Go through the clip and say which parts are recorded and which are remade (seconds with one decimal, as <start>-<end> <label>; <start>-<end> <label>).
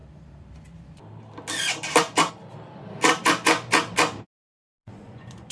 0.0-4.8 recorded; 4.8-5.5 remade